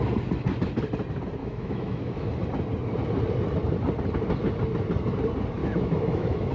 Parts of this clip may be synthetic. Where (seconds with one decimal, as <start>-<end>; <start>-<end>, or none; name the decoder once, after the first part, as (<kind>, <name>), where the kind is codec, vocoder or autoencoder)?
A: 1.4-2.3 (autoencoder, DAC-VAE); 5.6-6.5